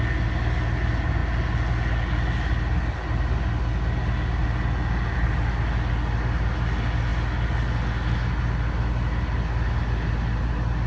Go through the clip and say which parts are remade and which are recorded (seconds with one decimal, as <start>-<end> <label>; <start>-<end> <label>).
0.0-10.9 recorded